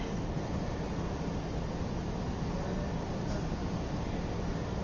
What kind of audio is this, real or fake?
real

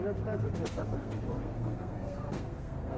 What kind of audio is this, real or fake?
fake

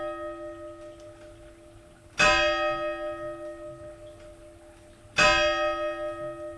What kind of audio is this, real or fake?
real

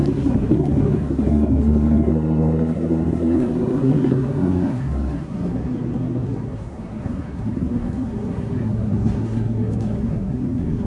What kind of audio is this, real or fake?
fake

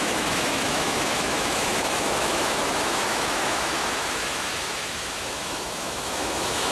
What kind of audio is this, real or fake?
fake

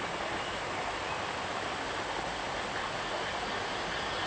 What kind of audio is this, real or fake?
real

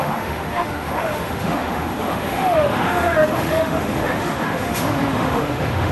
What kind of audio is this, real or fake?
fake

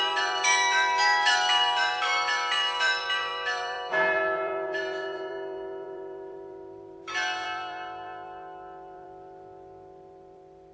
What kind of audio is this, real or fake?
fake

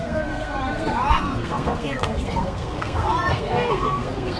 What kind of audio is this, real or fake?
fake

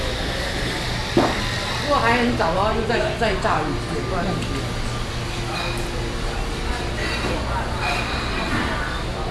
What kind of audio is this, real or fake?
real